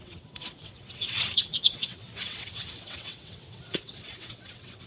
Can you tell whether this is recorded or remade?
remade